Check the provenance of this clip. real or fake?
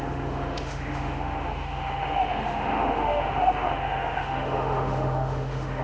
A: fake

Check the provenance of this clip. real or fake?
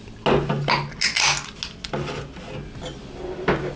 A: real